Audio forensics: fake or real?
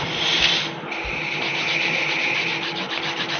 real